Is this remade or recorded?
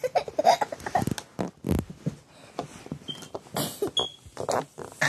recorded